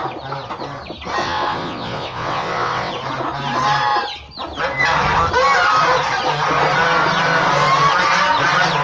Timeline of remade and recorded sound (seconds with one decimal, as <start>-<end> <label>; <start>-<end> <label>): 0.0-1.2 recorded; 1.2-2.9 remade; 2.9-8.8 recorded